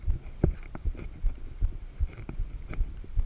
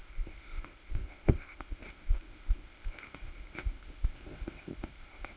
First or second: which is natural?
first